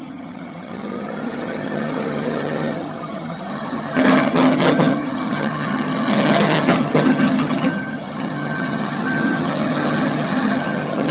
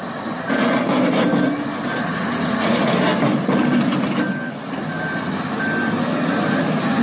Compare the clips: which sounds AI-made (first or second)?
first